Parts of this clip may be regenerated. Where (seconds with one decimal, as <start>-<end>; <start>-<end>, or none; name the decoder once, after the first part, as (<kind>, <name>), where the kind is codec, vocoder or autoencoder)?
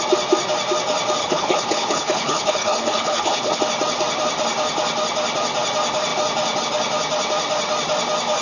1.2-3.6 (codec, HILCodec)